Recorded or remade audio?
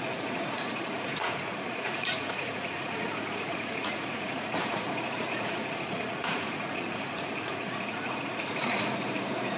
remade